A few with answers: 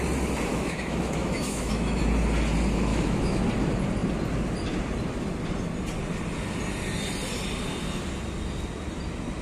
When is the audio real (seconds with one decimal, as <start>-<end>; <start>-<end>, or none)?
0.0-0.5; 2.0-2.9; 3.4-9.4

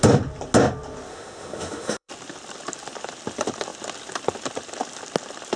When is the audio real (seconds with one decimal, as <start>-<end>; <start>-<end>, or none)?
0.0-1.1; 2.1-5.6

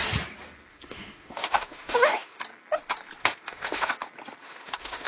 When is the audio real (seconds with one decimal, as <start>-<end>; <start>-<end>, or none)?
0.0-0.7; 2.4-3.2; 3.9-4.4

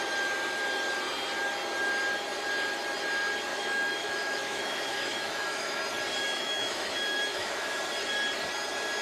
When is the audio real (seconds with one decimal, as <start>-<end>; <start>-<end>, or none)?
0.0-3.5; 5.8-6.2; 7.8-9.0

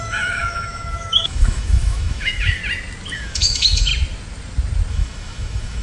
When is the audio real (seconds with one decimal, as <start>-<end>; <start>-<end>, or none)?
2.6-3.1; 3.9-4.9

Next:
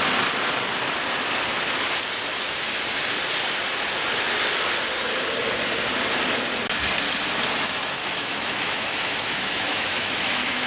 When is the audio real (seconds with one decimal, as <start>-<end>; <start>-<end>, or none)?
0.0-8.0

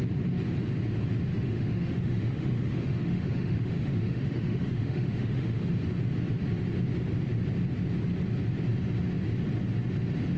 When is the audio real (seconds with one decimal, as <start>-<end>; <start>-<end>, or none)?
0.0-1.3; 5.7-10.4